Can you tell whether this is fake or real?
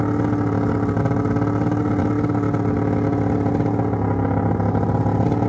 real